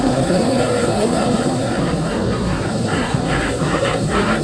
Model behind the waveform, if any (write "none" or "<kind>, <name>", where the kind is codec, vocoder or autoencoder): codec, SNAC